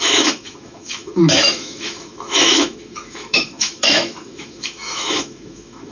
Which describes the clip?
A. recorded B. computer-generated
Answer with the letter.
B